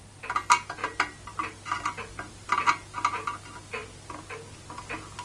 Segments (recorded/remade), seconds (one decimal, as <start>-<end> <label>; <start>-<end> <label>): 0.0-5.2 recorded